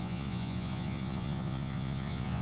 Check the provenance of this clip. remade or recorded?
remade